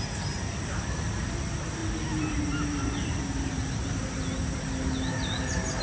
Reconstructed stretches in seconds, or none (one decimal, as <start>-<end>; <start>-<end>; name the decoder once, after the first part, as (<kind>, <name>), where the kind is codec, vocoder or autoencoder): none